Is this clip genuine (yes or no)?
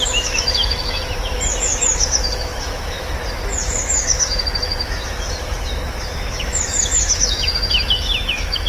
no